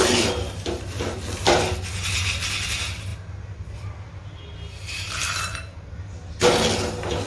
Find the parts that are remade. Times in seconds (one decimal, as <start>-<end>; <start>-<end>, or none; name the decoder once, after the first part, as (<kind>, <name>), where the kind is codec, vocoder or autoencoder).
0.0-1.4 (vocoder, BigVGAN v2); 3.1-5.9